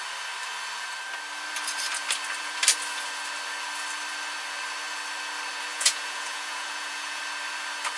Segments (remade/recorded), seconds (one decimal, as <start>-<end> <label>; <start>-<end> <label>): 0.0-5.7 recorded; 5.7-7.2 remade; 7.2-8.0 recorded